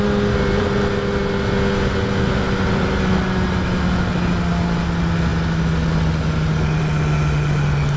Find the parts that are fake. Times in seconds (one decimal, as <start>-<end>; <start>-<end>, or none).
none